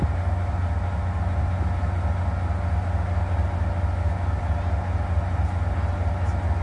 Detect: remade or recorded recorded